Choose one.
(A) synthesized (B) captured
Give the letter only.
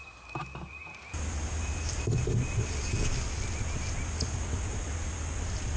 B